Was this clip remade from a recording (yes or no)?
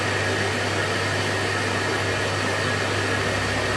no